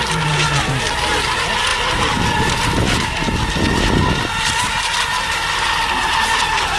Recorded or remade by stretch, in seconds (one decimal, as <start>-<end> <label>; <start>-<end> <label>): 0.0-6.8 recorded